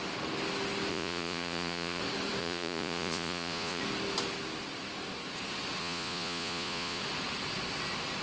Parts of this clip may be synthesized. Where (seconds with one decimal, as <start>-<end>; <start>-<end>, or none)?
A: 0.9-2.0; 2.4-3.8; 5.8-7.0